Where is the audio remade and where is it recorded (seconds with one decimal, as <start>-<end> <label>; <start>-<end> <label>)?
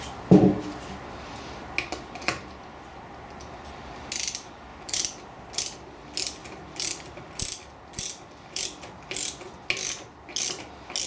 0.0-4.7 recorded; 4.7-5.6 remade; 5.6-6.4 recorded; 6.4-7.3 remade; 7.3-11.1 recorded